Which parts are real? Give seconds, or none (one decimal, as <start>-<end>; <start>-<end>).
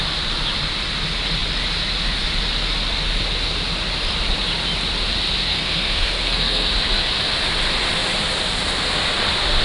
0.0-5.5; 6.7-9.6